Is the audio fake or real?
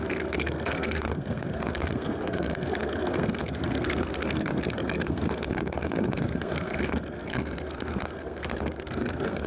fake